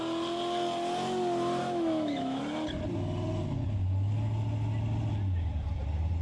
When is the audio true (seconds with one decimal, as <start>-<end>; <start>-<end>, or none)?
0.0-1.6; 2.4-6.2